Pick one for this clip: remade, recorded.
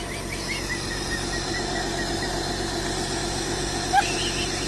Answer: recorded